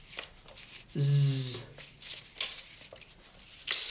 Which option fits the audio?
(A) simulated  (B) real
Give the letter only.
B